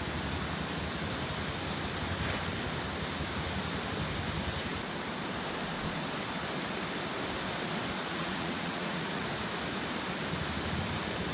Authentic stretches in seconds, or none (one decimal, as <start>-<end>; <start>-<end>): 0.0-8.1; 9.2-11.3